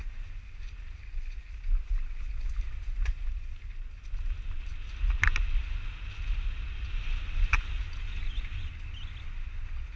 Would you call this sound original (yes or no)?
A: yes